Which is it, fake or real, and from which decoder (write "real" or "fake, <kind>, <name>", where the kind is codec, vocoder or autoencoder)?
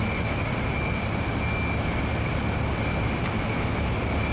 real